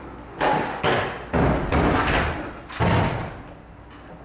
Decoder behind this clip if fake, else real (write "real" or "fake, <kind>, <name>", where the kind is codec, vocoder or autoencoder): real